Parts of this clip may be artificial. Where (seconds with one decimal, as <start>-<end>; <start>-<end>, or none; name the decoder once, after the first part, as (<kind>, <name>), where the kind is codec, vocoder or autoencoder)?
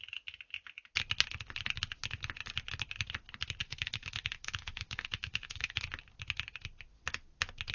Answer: 3.6-5.8 (autoencoder, DAC-VAE)